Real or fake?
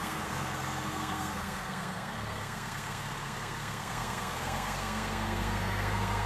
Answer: fake